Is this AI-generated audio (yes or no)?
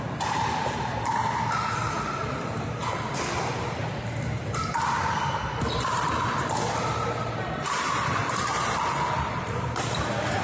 no